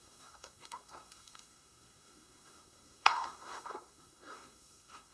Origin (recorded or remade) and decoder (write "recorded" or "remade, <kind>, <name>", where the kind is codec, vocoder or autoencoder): remade, codec, SNAC